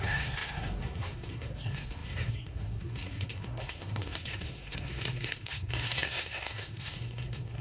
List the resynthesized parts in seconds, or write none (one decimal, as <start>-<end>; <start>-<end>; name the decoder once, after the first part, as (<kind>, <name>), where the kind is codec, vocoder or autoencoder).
0.0-7.6 (codec, SNAC)